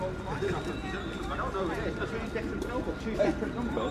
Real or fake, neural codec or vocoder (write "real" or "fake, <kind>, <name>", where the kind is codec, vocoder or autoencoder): real